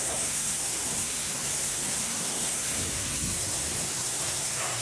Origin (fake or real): fake